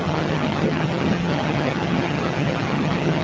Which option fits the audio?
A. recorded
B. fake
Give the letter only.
B